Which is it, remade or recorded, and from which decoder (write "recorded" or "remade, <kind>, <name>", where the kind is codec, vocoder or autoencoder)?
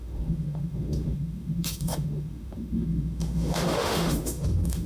remade, autoencoder, DAC-VAE